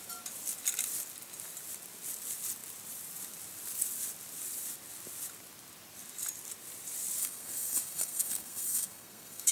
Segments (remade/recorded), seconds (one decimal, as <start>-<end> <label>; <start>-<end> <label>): 0.0-7.2 recorded; 7.2-9.5 remade